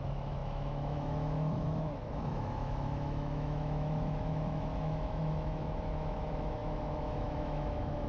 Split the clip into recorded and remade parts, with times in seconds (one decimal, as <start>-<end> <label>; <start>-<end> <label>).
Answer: 0.0-8.1 remade